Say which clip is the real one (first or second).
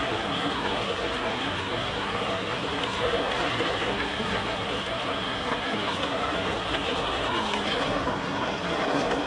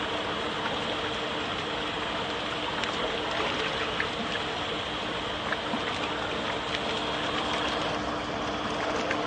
second